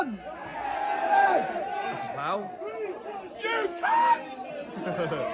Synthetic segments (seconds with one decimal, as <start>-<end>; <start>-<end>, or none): none